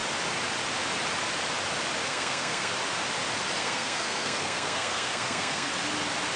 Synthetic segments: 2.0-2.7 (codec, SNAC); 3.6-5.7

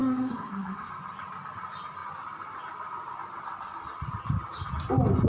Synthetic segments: 0.0-0.9 (codec, SNAC)

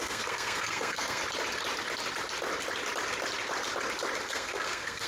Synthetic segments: 0.0-1.2 (codec, SNAC); 4.3-5.1

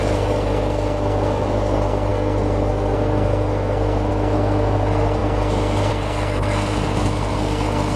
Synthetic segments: 0.0-8.0 (codec, SNAC)